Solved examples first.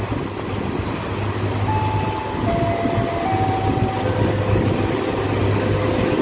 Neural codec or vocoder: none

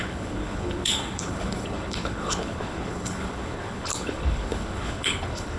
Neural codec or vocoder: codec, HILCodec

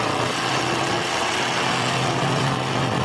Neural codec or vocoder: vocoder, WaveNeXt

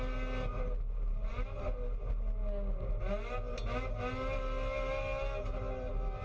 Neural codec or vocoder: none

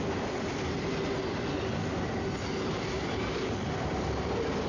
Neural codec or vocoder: none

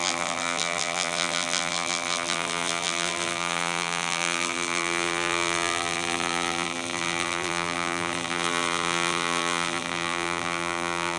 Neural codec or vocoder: vocoder, BigVGAN v2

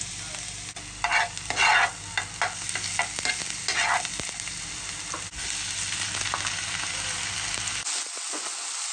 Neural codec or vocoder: none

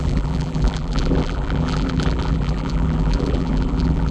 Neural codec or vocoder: vocoder, BigVGAN v2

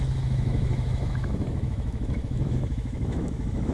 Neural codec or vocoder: autoencoder, DAC-VAE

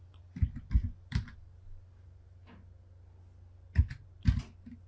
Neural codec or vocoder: none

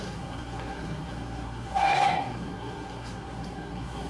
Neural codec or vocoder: codec, SNAC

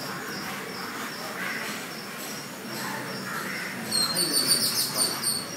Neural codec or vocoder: none